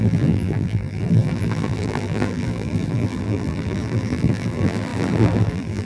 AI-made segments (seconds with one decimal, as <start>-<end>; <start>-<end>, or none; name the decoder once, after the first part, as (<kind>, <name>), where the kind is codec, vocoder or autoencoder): 0.0-5.9 (vocoder, BigVGAN v2)